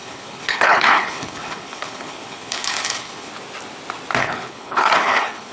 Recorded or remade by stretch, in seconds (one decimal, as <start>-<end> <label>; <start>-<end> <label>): 0.0-3.3 remade; 3.3-4.2 recorded; 4.2-5.5 remade